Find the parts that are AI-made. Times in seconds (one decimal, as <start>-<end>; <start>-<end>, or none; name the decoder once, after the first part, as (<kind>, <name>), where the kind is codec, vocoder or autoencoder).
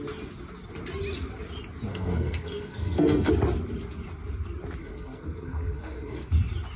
1.9-3.3 (codec, SNAC); 4.8-6.3